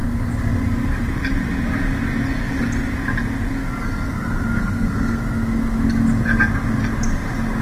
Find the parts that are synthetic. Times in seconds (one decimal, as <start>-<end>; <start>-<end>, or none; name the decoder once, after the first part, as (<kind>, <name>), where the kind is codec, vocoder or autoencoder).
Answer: 4.6-5.2 (codec, SNAC)